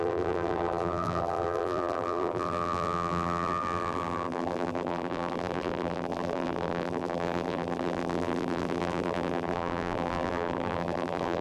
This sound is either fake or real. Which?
fake